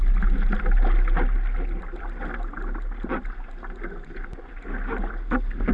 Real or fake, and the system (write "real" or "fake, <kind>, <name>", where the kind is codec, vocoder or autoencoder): real